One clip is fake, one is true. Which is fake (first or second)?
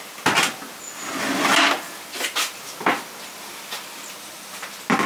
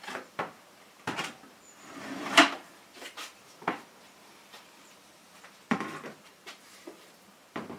second